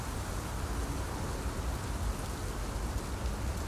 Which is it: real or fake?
real